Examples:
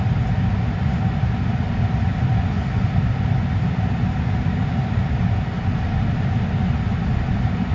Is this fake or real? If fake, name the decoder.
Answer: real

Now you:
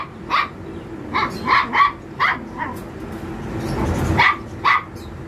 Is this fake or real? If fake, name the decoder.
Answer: real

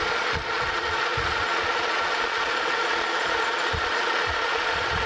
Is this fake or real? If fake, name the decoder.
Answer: fake, vocoder, Vocos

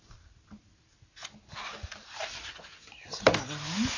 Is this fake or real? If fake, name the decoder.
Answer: real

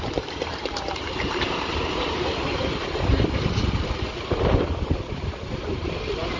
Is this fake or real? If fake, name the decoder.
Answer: fake, vocoder, BigVGAN v2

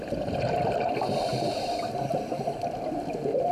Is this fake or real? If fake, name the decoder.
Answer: fake, vocoder, BigVGAN v2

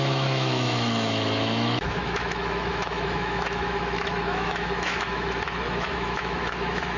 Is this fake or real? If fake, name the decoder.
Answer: fake, autoencoder, DAC-VAE